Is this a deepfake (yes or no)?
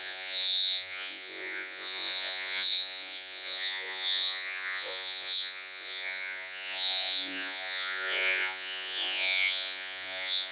yes